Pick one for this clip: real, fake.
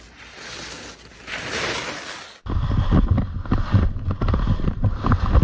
real